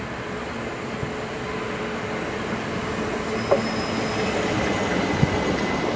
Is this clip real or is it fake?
real